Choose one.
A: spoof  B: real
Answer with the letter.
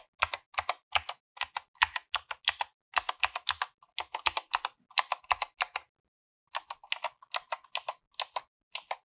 B